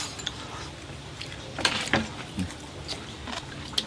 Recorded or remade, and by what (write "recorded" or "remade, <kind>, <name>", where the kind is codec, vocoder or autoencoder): recorded